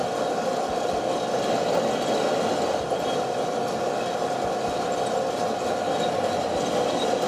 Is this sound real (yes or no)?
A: yes